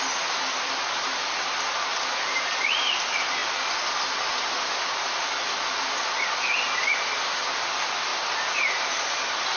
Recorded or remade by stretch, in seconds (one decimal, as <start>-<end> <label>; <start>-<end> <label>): 0.0-9.6 recorded